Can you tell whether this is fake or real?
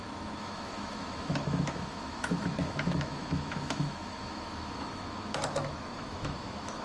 fake